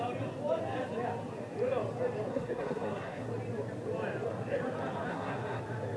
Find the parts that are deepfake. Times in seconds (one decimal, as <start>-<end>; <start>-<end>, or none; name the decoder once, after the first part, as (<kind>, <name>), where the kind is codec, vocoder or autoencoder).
2.3-3.3 (codec, SNAC); 5.1-5.6